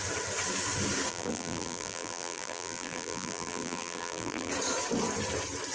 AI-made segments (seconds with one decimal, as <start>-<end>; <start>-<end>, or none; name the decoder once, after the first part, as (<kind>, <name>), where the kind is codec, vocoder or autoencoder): 1.1-4.5 (vocoder, BigVGAN v2)